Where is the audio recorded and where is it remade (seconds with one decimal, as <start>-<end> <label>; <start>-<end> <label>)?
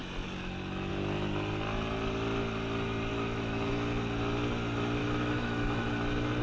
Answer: 0.0-3.1 recorded; 3.1-3.7 remade; 3.7-5.0 recorded; 5.0-5.9 remade; 5.9-6.4 recorded